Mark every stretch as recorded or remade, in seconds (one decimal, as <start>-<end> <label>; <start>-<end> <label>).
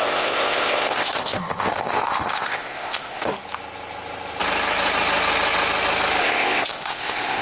0.0-3.3 remade; 3.3-6.2 recorded; 6.2-7.4 remade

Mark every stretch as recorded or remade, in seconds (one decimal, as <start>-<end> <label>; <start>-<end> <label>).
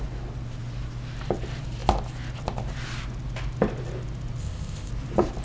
0.0-4.4 recorded; 4.4-4.9 remade; 4.9-5.4 recorded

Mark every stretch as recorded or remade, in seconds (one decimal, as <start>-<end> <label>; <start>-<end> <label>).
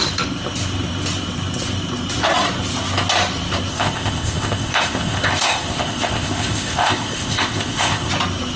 0.0-3.7 recorded; 3.7-8.1 remade; 8.1-8.6 recorded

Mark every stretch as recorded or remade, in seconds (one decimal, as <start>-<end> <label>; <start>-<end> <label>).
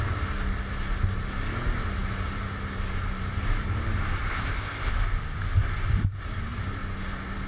0.0-4.3 recorded; 4.3-4.9 remade; 4.9-7.5 recorded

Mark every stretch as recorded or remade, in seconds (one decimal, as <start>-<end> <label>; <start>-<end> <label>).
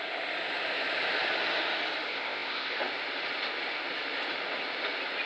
0.0-2.1 recorded; 2.1-2.8 remade; 2.8-5.3 recorded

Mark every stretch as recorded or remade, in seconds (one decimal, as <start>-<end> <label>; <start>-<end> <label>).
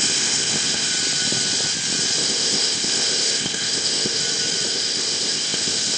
0.0-0.9 remade; 0.9-2.2 recorded; 2.2-4.2 remade; 4.2-4.7 recorded; 4.7-6.0 remade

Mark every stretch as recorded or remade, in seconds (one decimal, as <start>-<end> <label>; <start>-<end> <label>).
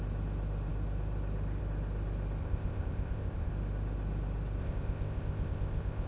0.0-2.4 recorded; 2.4-3.5 remade; 3.5-4.6 recorded; 4.6-6.1 remade